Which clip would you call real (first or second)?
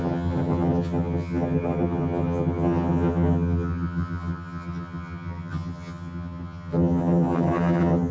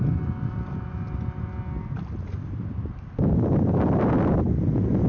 second